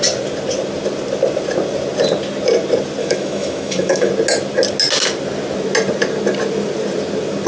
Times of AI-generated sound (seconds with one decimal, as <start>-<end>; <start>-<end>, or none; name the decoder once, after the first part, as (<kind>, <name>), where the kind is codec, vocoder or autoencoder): 3.0-4.1 (autoencoder, DAC-VAE)